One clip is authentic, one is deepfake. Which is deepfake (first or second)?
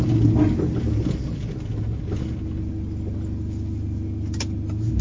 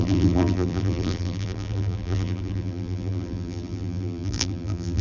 second